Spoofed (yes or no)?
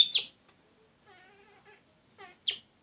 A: no